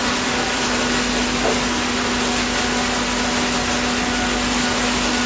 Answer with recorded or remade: recorded